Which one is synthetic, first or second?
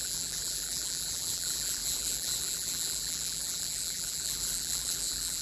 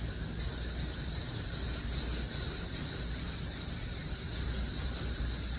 first